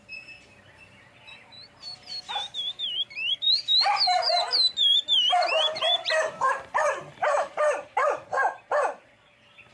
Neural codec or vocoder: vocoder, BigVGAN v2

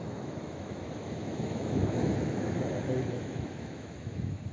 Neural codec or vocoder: autoencoder, DAC-VAE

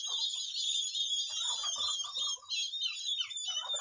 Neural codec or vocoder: none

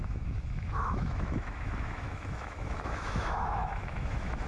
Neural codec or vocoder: autoencoder, DAC-VAE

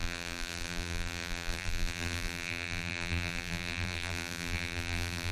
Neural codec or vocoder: vocoder, BigVGAN v2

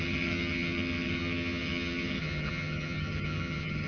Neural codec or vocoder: vocoder, HiFi-GAN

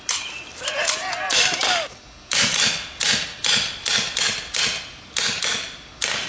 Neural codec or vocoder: none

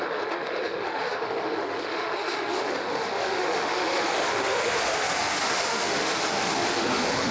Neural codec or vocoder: autoencoder, DAC-VAE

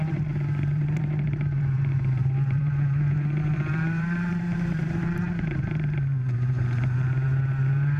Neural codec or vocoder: vocoder, BigVGAN v2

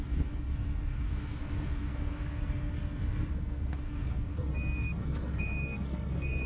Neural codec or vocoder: codec, SNAC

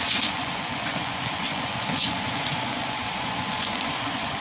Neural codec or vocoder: vocoder, Vocos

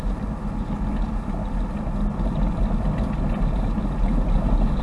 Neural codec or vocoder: none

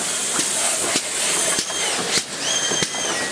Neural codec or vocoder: none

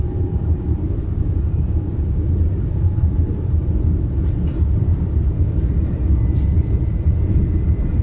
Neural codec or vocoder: vocoder, BigVGAN v2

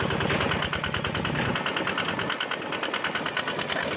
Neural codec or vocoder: none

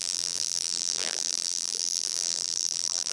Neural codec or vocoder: vocoder, BigVGAN v2